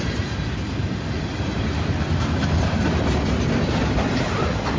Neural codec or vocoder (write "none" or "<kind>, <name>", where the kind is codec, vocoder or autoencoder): none